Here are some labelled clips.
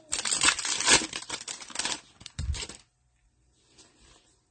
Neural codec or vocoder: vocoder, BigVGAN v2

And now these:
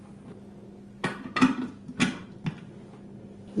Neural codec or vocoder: none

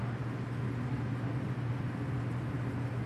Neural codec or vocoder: none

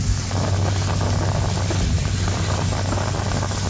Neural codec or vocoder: none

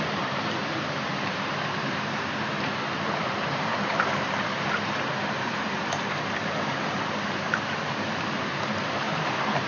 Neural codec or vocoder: vocoder, BigVGAN v2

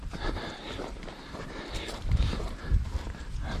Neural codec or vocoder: vocoder, BigVGAN v2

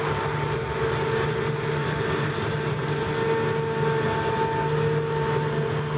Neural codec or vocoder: none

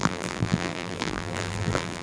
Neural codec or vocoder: vocoder, BigVGAN v2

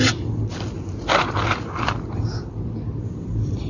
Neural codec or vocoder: vocoder, BigVGAN v2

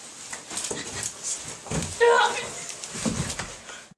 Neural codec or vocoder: none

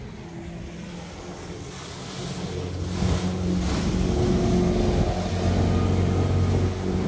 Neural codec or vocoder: none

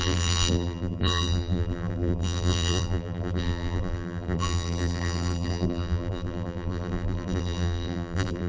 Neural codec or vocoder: vocoder, BigVGAN v2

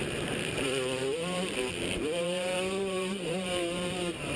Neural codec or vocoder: vocoder, BigVGAN v2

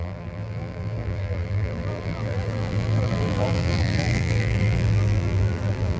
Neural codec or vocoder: vocoder, BigVGAN v2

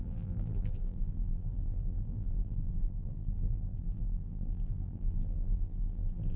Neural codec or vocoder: vocoder, BigVGAN v2